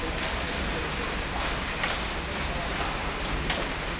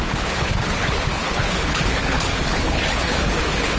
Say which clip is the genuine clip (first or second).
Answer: first